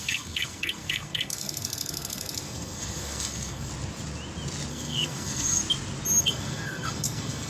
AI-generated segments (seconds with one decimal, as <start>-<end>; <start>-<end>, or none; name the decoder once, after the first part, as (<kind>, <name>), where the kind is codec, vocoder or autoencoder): 0.0-3.7 (codec, SNAC); 4.7-5.6; 6.2-7.5